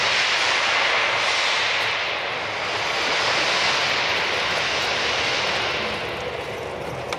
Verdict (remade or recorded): recorded